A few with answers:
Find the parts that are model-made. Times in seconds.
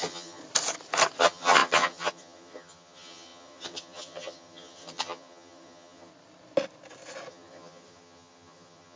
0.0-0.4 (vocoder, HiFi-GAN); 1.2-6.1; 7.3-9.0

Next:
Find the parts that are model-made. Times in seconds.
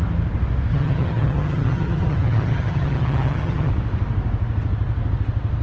0.7-3.7 (vocoder, HiFi-GAN)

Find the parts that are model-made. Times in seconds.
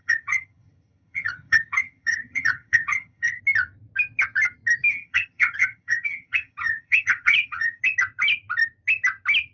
0.0-3.4 (vocoder, HiFi-GAN); 4.9-7.8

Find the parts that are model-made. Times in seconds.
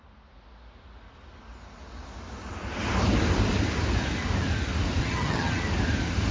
5.0-5.6 (vocoder, HiFi-GAN)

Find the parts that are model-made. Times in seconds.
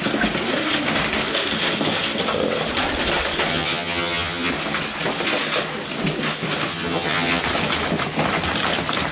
3.5-4.5 (vocoder, HiFi-GAN); 6.7-7.4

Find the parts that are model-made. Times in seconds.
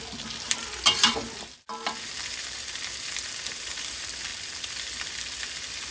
none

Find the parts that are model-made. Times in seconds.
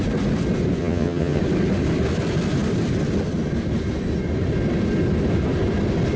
0.8-1.4 (vocoder, HiFi-GAN)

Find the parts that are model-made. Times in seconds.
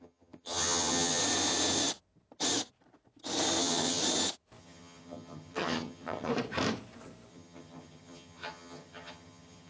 0.0-1.2 (vocoder, HiFi-GAN); 3.6-4.0; 4.6-6.3; 7.3-9.7